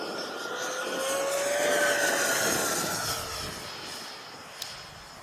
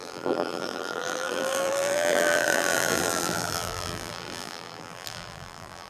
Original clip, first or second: first